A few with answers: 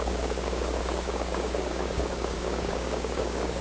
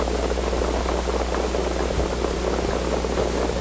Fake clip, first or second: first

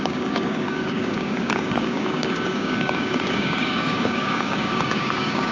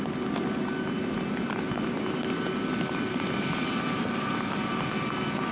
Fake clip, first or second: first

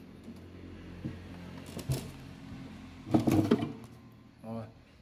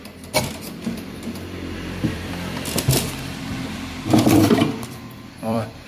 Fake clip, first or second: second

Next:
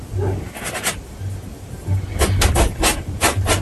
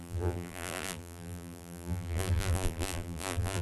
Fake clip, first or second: second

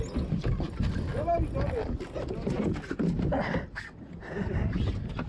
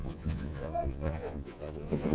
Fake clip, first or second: second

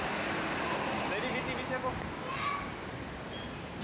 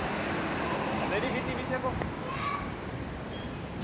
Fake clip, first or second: second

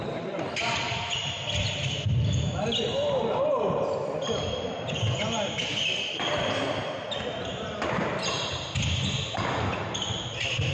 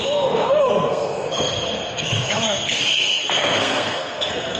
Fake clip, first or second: second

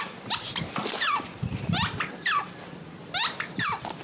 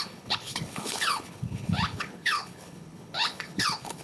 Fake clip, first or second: second